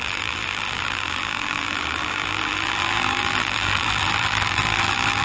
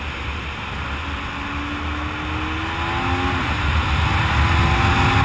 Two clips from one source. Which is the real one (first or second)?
second